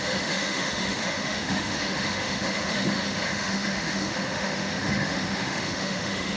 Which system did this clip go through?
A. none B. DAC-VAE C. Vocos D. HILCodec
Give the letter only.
B